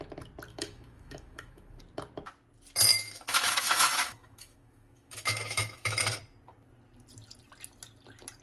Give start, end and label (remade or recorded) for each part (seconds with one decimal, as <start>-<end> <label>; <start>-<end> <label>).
0.0-0.5 recorded; 0.5-1.8 remade; 1.8-2.9 recorded; 2.9-6.2 remade; 6.2-8.4 recorded